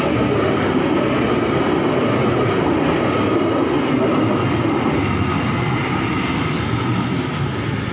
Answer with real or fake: real